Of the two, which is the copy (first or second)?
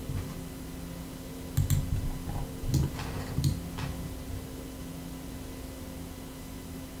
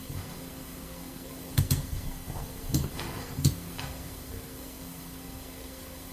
second